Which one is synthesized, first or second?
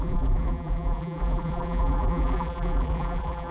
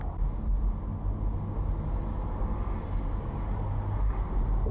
first